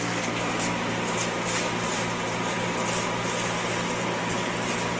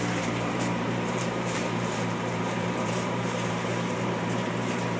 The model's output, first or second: second